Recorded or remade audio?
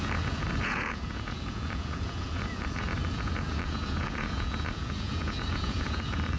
remade